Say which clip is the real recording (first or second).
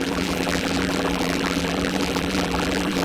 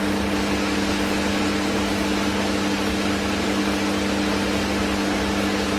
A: second